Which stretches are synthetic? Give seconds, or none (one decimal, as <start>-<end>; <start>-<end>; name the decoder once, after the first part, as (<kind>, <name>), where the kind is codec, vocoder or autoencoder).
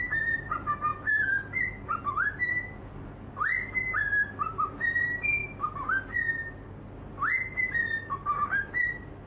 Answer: none